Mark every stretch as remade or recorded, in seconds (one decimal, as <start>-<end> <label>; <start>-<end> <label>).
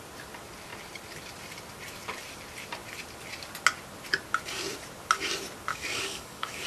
0.0-5.7 recorded; 5.7-6.7 remade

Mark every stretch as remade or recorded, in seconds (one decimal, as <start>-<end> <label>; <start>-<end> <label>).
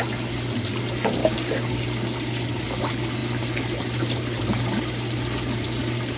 0.0-1.2 recorded; 1.2-1.8 remade; 1.8-6.2 recorded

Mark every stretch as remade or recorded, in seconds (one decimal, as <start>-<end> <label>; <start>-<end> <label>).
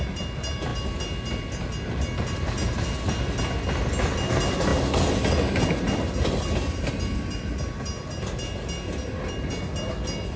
0.0-10.4 recorded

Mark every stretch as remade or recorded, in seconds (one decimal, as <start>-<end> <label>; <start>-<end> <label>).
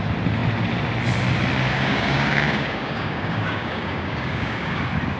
0.0-1.7 recorded; 1.7-4.8 remade; 4.8-5.2 recorded